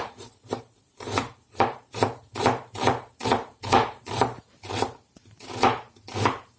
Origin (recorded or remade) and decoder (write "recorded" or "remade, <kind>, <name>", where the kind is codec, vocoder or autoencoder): remade, vocoder, BigVGAN v2